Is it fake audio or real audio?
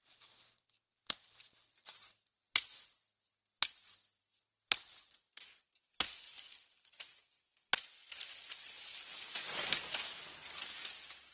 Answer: real